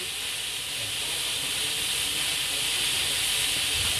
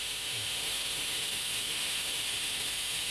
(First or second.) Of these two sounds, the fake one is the second